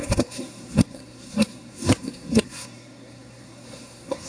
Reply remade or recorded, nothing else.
remade